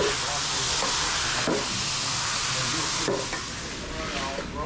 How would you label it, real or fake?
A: real